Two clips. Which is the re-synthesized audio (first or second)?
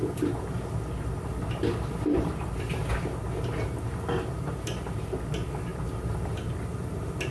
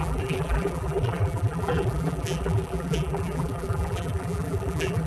second